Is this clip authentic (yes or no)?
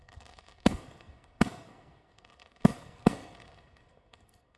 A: no